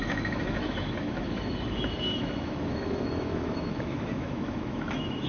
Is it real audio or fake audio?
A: fake